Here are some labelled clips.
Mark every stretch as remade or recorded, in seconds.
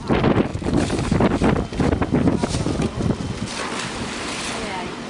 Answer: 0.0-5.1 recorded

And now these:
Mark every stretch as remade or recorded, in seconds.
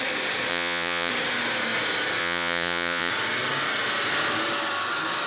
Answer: 0.0-0.5 recorded; 0.5-1.1 remade; 1.1-2.2 recorded; 2.2-3.1 remade; 3.1-5.3 recorded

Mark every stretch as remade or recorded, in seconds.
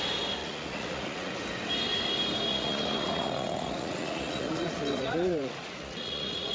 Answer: 0.0-0.4 recorded; 0.4-1.3 remade; 1.3-2.5 recorded; 2.5-6.5 remade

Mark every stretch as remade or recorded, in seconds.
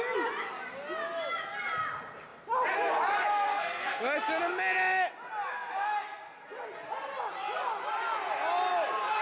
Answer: 0.0-3.3 recorded; 3.3-4.0 remade; 4.0-9.2 recorded